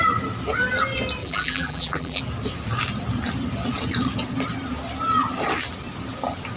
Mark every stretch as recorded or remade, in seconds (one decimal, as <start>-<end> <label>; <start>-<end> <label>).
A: 0.0-1.2 recorded; 1.2-2.2 remade; 2.2-6.6 recorded